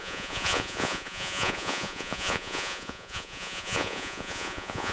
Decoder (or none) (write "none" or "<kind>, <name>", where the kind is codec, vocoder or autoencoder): vocoder, Vocos